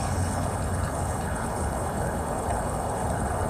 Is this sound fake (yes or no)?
yes